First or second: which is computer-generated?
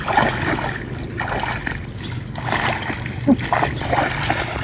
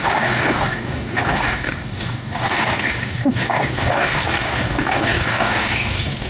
second